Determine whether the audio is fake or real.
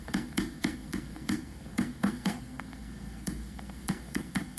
fake